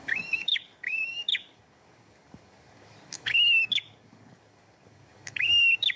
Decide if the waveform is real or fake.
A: fake